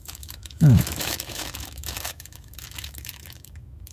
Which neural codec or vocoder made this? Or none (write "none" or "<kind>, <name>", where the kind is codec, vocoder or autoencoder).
autoencoder, DAC-VAE